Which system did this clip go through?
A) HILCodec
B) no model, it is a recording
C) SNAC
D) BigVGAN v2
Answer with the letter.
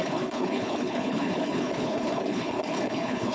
A